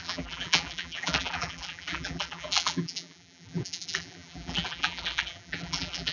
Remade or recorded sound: remade